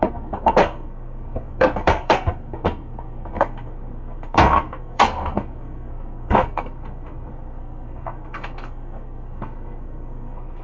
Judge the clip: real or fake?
fake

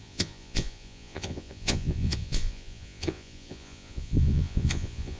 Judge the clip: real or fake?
fake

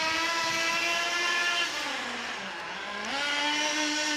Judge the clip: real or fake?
real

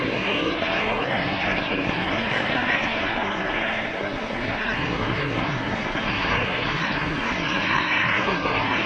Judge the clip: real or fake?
fake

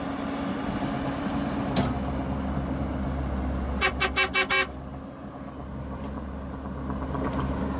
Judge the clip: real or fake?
real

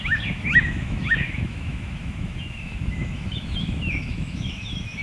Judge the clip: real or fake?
fake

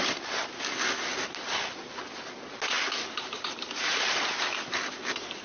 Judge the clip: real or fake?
real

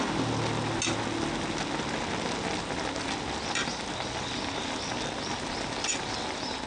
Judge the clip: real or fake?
real